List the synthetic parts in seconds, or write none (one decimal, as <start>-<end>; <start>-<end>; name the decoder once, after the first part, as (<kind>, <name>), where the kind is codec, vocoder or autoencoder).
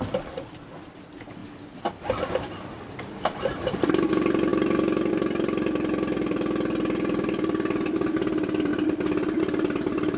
0.0-1.4 (vocoder, BigVGAN v2); 4.1-8.7; 9.4-10.2